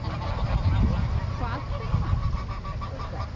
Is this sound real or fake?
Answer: real